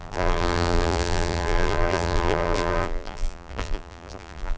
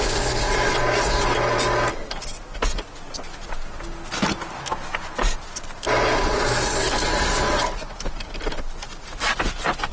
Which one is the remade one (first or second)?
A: first